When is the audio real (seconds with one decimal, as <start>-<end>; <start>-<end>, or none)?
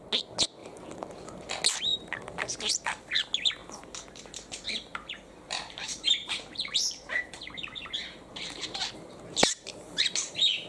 0.0-0.6; 1.5-1.9; 3.0-4.9; 8.6-10.7